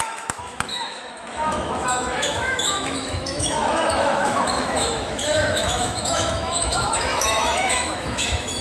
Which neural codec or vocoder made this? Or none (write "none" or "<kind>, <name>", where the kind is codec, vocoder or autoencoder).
autoencoder, DAC-VAE